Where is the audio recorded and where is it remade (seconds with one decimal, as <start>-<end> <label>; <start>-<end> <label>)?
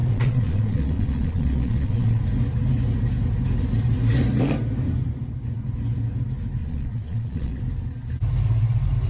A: 0.0-2.2 remade; 2.2-6.6 recorded; 6.6-7.6 remade; 7.6-9.1 recorded